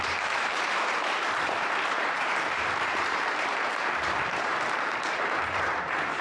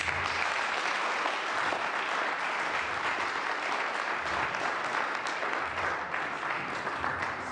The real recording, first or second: second